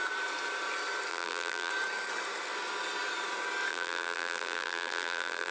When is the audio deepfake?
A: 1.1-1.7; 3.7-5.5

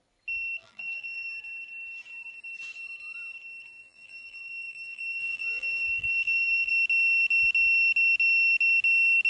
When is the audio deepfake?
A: 0.6-1.3; 3.8-6.7